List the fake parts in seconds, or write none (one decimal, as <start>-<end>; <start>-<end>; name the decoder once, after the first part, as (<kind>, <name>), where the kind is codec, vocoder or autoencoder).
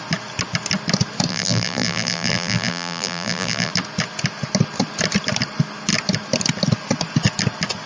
1.3-3.7 (vocoder, BigVGAN v2)